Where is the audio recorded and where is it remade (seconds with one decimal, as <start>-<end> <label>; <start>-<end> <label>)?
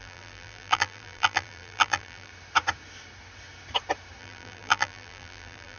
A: 0.0-2.3 remade; 2.3-4.2 recorded; 4.2-5.8 remade